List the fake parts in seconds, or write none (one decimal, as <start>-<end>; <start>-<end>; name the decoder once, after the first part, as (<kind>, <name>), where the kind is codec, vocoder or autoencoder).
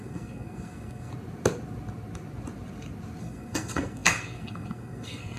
0.0-1.1 (codec, SNAC); 3.2-5.4